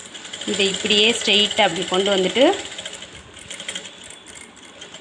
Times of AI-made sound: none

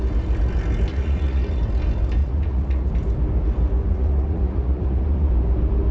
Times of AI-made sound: 0.9-1.6 (vocoder, Vocos); 2.2-2.9; 3.9-5.3

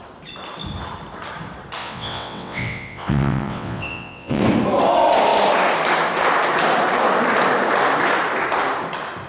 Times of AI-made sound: 1.8-4.4 (vocoder, WaveNeXt)

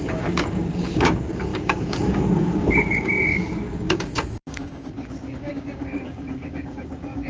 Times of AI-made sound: 0.0-7.3 (codec, DAC)

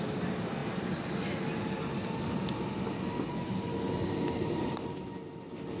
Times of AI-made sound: none

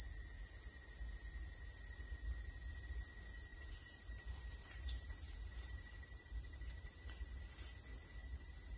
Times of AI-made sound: 3.5-7.4 (vocoder, BigVGAN v2); 8.2-8.8

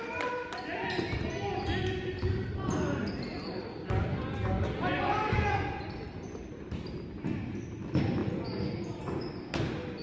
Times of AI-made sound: none

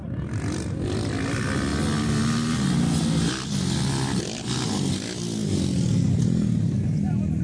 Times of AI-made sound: none